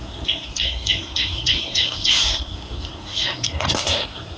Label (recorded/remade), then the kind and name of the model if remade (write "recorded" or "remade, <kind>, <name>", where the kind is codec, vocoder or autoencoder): remade, codec, SNAC